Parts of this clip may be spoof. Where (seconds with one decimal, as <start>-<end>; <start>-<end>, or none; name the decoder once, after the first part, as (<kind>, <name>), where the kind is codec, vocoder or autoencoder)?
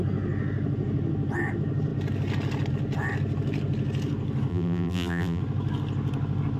4.5-5.4 (vocoder, BigVGAN v2)